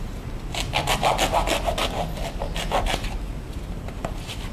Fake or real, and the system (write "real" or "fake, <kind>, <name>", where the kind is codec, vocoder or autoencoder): real